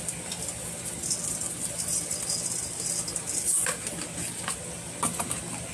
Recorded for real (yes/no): yes